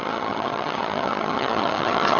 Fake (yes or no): yes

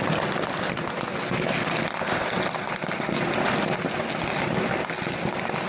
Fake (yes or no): no